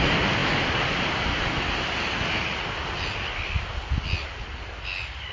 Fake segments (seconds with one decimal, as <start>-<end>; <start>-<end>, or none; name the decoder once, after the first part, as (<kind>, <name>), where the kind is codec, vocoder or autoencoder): none